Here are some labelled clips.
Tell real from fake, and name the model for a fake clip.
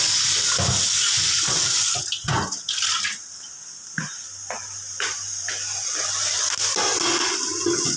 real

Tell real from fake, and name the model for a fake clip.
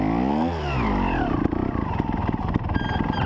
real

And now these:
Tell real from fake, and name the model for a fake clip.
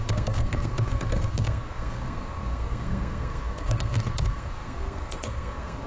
fake, codec, SNAC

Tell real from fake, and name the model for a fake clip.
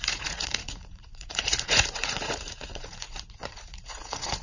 fake, vocoder, Vocos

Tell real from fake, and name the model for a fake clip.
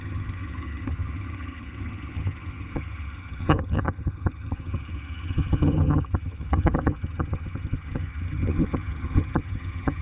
fake, vocoder, HiFi-GAN